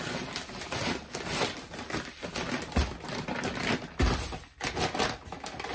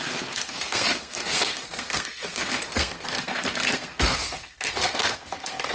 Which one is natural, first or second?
first